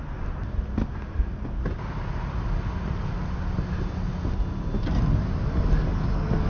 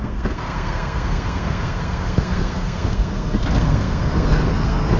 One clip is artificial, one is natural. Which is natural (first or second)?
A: first